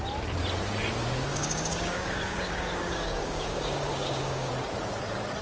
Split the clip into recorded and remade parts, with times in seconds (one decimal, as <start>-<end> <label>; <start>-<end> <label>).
0.0-1.3 recorded; 1.3-4.5 remade; 4.5-5.4 recorded